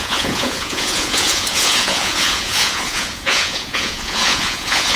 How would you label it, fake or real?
fake